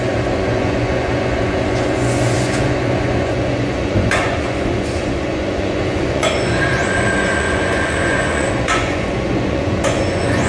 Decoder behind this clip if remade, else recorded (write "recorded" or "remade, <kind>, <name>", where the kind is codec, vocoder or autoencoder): remade, vocoder, Vocos